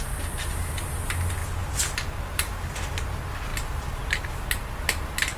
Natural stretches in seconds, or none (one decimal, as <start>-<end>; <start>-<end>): 0.0-5.4